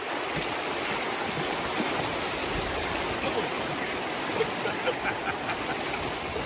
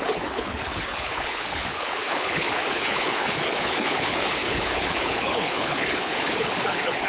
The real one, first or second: first